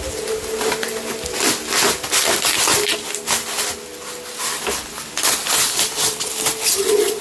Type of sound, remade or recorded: recorded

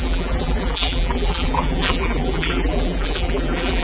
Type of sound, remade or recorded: remade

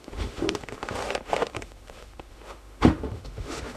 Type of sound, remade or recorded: remade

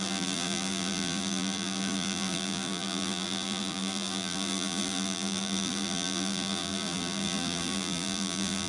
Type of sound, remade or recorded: remade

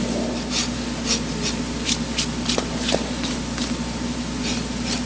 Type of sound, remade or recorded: recorded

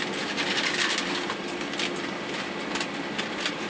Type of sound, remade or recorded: recorded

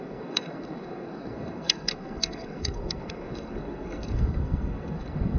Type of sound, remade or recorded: remade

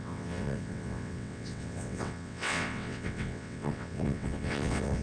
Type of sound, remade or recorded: remade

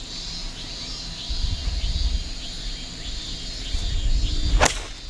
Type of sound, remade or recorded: recorded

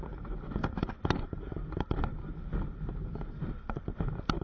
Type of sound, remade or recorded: recorded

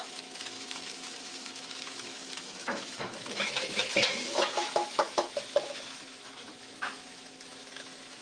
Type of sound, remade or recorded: remade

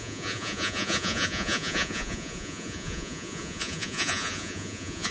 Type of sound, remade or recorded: remade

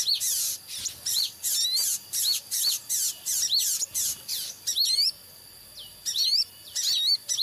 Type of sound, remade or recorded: remade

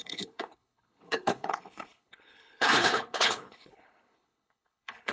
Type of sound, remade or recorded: remade